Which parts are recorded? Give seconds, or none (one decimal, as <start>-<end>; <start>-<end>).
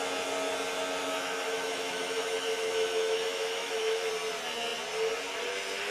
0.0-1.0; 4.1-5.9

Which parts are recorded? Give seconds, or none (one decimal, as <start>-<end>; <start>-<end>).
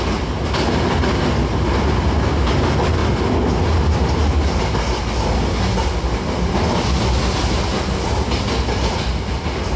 0.0-9.8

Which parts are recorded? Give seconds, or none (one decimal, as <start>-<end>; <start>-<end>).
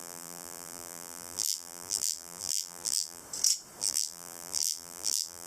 3.2-3.8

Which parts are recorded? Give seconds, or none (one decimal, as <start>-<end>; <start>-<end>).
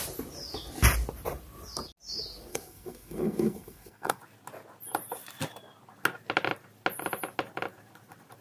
0.0-2.5; 4.2-8.4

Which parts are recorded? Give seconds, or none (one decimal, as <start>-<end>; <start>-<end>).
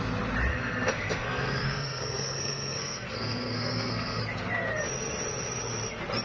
0.0-0.5; 4.2-6.2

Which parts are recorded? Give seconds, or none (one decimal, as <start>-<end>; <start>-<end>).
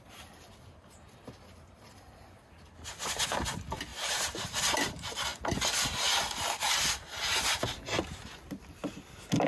0.0-3.9; 4.6-9.5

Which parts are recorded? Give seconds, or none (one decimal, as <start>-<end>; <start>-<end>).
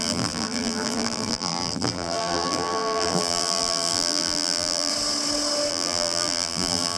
4.9-5.7